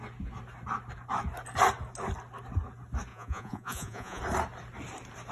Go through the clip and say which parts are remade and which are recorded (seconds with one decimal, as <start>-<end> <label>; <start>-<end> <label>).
0.0-3.1 recorded; 3.1-4.2 remade; 4.2-5.3 recorded